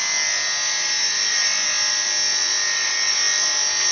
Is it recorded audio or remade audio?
recorded